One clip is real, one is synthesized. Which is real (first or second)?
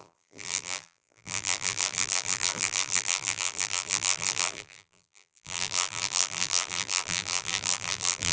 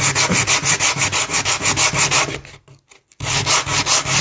second